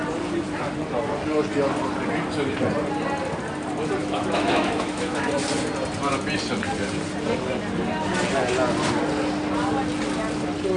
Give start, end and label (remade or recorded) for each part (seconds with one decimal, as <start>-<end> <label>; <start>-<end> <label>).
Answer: 0.0-4.0 recorded; 4.0-5.3 remade; 5.3-10.8 recorded